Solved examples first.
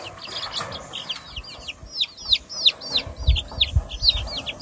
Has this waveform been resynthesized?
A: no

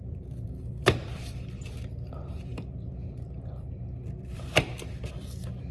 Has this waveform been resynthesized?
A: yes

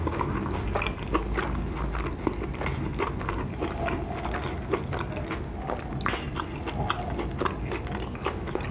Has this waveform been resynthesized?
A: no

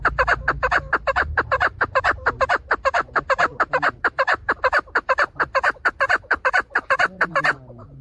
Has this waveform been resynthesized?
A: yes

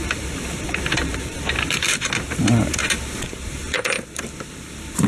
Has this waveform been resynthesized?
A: yes